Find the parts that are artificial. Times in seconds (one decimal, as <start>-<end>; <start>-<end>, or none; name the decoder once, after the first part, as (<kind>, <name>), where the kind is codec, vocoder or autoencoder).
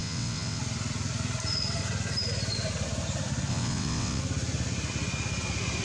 0.0-0.6 (vocoder, WaveNeXt); 3.5-4.2